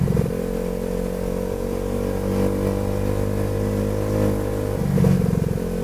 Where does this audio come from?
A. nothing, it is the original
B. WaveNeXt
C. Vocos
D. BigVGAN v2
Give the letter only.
A